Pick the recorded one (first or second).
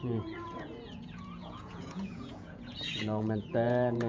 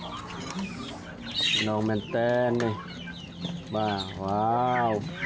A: second